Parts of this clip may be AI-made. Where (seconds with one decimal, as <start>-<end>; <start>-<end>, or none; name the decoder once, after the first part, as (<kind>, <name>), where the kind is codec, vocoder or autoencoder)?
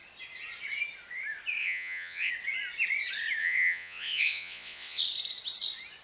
1.6-2.3 (vocoder, Vocos); 3.4-5.0